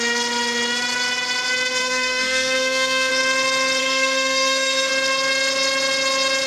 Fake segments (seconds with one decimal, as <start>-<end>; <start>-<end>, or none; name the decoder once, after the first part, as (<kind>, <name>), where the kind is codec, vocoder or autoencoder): 1.8-3.1 (codec, SNAC); 3.8-4.9